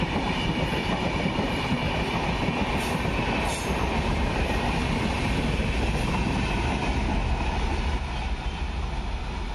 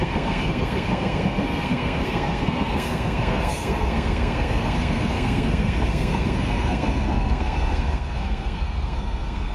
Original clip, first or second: first